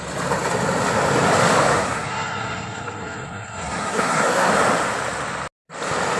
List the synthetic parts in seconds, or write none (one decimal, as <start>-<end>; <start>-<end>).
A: 1.7-4.5